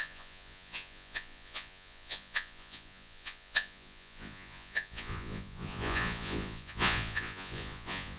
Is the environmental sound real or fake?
fake